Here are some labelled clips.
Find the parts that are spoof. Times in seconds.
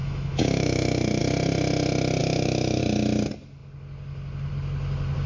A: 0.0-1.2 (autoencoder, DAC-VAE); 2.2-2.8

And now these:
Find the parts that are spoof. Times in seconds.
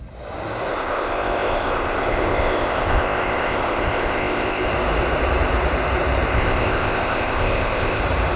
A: 0.7-4.7 (codec, ZipCodec); 6.3-8.0